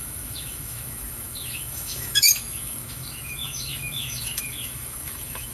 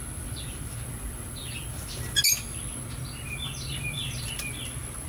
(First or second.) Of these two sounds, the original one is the second